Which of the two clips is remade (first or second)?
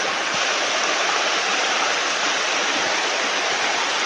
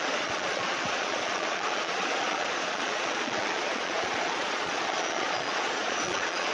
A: second